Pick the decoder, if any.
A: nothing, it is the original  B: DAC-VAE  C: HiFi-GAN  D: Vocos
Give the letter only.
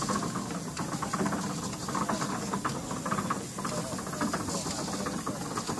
A